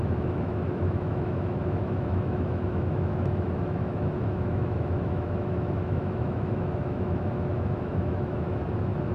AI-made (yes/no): yes